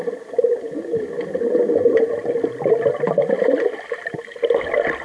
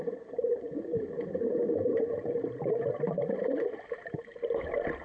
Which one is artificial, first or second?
second